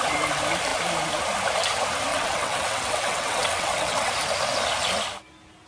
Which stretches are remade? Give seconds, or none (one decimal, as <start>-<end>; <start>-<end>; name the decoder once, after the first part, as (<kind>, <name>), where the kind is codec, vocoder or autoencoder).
2.1-4.1 (vocoder, WaveNeXt)